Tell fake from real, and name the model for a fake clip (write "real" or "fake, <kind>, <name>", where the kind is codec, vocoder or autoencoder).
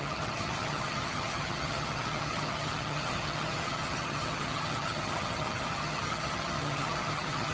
fake, vocoder, HiFi-GAN